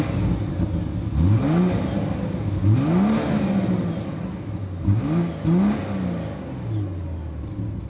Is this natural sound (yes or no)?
yes